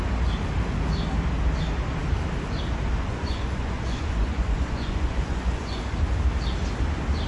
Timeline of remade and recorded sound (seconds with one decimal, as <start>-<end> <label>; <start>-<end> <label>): 0.0-3.1 recorded; 3.1-5.8 remade; 5.8-7.3 recorded

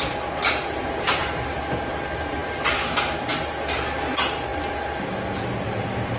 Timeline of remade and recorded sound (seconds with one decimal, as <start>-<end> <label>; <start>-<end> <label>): 0.0-6.2 recorded

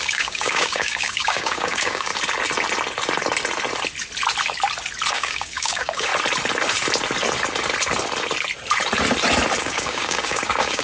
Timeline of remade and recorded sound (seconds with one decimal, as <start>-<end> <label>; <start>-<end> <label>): 0.0-2.1 remade; 2.1-5.1 recorded; 5.1-6.1 remade; 6.1-9.6 recorded; 9.6-10.8 remade

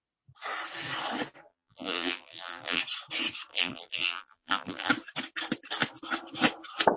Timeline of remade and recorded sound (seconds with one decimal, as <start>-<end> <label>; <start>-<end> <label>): 0.0-1.5 recorded; 1.5-2.8 remade; 2.8-3.5 recorded; 3.5-4.9 remade; 4.9-7.0 recorded

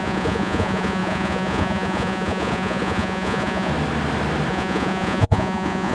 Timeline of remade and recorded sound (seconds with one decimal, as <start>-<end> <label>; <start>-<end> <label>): 0.0-3.7 remade; 3.7-4.5 recorded; 4.5-5.9 remade

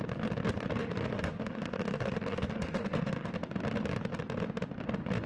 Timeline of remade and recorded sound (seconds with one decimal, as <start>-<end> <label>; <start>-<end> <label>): 0.0-0.8 recorded; 0.8-3.3 remade; 3.3-5.3 recorded

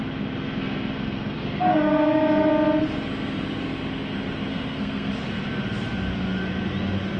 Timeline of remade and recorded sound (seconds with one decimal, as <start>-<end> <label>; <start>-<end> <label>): 0.0-0.6 recorded; 0.6-2.5 remade; 2.5-4.5 recorded; 4.5-5.1 remade; 5.1-7.2 recorded

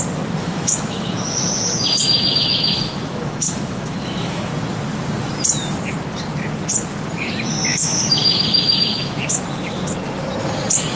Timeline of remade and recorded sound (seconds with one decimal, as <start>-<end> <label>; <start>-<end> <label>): 0.0-0.4 recorded; 0.4-4.5 remade; 4.5-7.7 recorded; 7.7-9.4 remade; 9.4-11.0 recorded